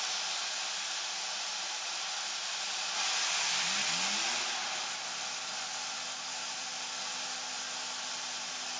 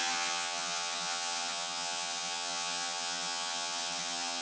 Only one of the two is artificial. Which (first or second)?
second